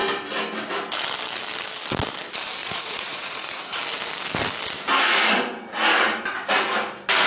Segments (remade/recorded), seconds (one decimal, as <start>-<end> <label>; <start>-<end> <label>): 0.0-2.6 recorded; 2.6-3.8 remade; 3.8-7.3 recorded